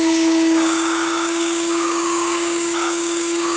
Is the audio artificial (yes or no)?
yes